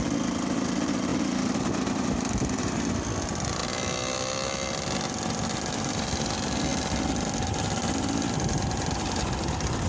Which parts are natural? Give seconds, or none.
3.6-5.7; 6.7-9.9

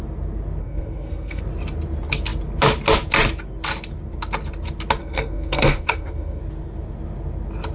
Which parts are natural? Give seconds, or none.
0.0-0.6; 1.4-5.0; 6.4-7.7

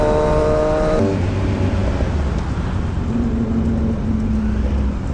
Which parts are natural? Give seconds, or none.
0.0-5.1

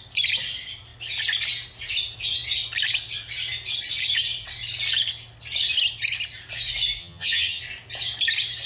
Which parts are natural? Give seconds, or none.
0.0-7.0; 7.6-8.7

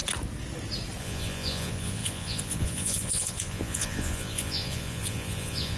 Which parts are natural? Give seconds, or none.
0.0-1.0

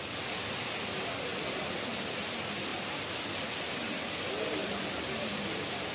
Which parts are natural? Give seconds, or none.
0.0-5.9

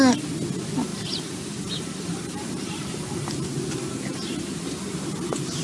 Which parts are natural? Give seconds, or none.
0.0-0.9; 3.3-4.1; 4.8-5.6

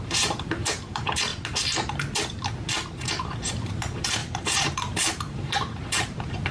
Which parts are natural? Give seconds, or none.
1.3-3.2